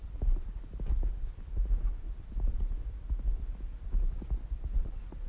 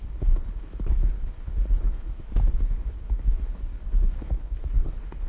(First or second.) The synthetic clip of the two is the second